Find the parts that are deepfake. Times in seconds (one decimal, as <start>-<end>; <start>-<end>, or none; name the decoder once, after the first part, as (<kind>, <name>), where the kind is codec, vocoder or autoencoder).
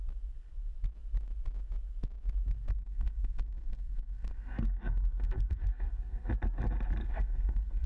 2.7-6.3 (codec, SNAC); 7.0-7.9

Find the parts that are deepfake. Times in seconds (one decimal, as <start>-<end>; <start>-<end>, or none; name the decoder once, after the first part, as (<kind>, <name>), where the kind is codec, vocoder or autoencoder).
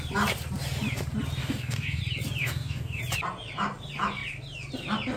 1.4-2.0 (codec, DAC); 2.4-3.0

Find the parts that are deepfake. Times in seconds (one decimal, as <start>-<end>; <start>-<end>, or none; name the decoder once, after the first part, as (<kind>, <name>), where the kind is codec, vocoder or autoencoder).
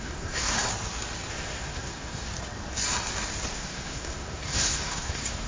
0.0-0.7 (codec, SNAC); 1.3-2.3; 3.5-5.5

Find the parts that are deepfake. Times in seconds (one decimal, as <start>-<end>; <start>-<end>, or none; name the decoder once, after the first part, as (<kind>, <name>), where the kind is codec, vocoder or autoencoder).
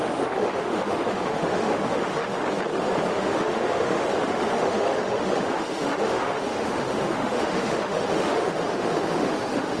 0.0-2.4 (autoencoder, DAC-VAE); 3.1-9.8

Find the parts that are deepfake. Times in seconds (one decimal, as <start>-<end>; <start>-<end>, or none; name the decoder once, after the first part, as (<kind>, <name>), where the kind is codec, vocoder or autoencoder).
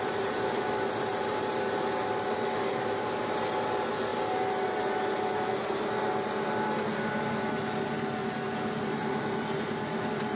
none